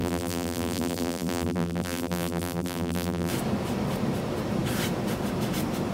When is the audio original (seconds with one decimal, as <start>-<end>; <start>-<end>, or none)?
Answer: 3.3-5.9